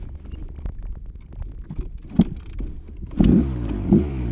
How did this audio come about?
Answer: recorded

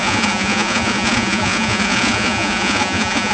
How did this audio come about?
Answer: remade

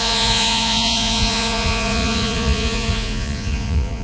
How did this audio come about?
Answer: remade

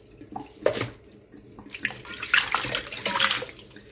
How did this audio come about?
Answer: recorded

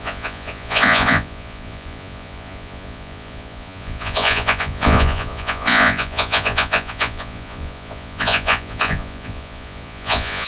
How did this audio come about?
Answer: remade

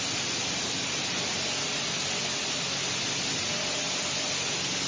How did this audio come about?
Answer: recorded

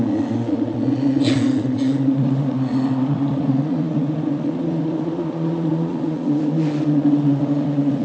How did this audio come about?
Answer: remade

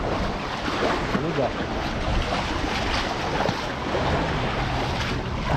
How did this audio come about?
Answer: recorded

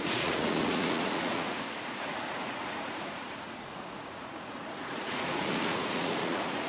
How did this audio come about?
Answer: remade